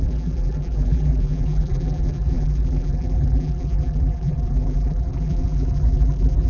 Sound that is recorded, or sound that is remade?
remade